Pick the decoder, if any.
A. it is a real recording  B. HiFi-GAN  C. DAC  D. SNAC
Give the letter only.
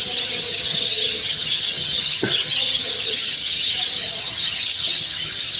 B